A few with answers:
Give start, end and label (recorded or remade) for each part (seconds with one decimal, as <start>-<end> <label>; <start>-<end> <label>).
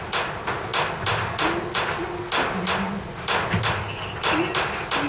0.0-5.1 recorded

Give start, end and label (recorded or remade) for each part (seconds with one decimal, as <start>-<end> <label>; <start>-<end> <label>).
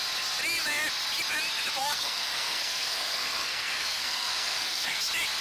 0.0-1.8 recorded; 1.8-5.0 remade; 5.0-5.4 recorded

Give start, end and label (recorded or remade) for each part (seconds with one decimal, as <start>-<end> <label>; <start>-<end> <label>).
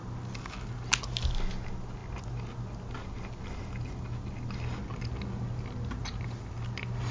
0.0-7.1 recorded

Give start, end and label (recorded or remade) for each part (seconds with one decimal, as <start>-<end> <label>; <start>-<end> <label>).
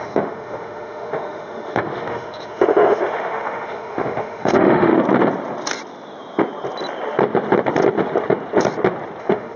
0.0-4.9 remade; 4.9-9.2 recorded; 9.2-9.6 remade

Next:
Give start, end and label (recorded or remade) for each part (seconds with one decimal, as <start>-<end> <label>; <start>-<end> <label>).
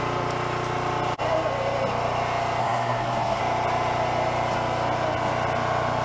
0.0-2.6 recorded; 2.6-3.4 remade; 3.4-6.0 recorded